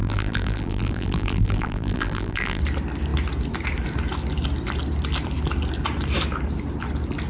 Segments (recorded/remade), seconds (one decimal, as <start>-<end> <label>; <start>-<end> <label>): 0.0-2.6 remade; 2.6-7.3 recorded

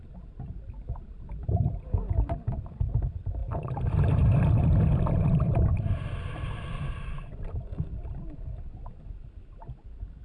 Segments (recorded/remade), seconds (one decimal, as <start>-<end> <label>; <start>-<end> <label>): 0.0-10.2 remade